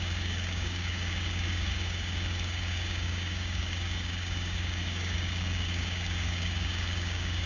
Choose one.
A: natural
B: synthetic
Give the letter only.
B